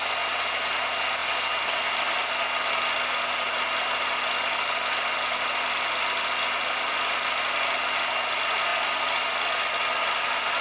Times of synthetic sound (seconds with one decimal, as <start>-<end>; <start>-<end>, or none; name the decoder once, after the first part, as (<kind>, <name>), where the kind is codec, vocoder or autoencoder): none